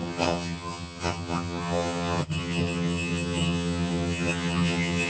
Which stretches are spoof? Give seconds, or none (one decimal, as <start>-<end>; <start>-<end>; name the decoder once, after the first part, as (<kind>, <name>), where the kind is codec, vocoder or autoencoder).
0.0-5.1 (vocoder, HiFi-GAN)